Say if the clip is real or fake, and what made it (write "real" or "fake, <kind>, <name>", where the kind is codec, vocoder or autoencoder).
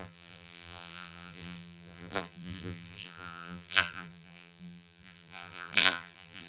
fake, vocoder, BigVGAN v2